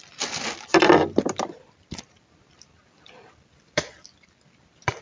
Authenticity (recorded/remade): remade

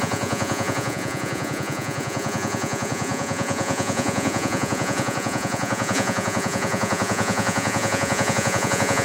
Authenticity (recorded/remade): remade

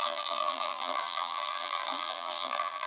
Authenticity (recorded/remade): remade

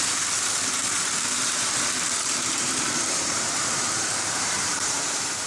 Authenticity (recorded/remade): remade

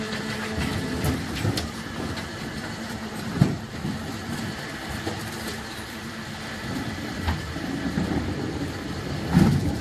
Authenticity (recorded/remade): remade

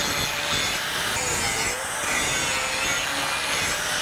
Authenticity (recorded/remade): recorded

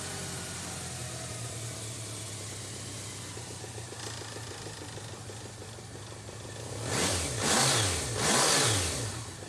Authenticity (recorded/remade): recorded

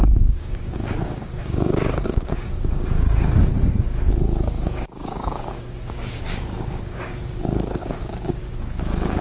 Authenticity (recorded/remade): remade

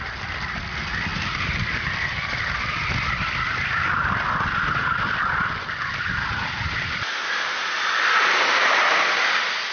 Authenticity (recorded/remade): recorded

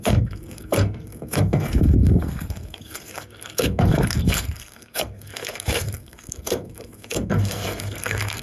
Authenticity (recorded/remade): remade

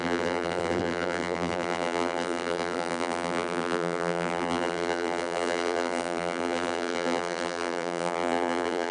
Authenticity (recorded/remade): remade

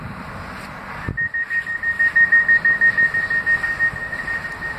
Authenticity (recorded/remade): recorded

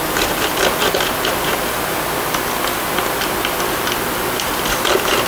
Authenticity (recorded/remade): recorded